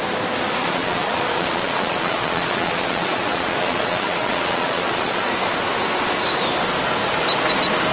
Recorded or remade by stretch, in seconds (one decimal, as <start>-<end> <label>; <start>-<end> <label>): 0.0-0.6 recorded; 0.6-5.3 remade; 5.3-7.9 recorded